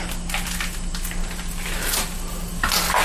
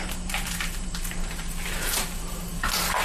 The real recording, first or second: first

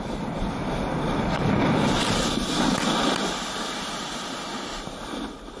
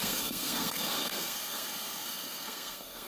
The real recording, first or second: first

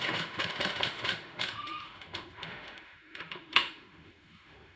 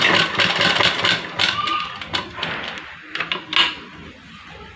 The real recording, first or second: second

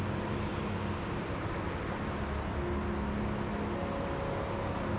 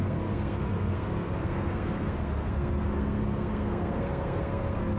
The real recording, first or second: first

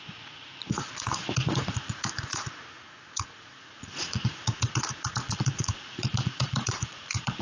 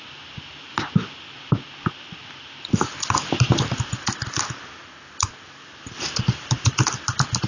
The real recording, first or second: second